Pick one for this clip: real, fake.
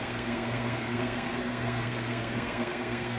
fake